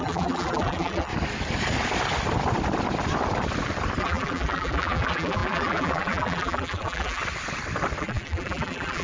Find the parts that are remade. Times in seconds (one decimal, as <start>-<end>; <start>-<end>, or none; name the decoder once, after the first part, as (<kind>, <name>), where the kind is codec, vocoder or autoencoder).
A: 0.0-1.1 (vocoder, BigVGAN v2); 4.0-7.2; 8.0-9.0